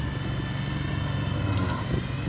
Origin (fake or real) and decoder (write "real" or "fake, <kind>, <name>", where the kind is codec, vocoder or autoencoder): real